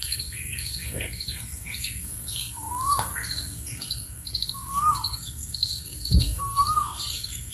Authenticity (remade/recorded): remade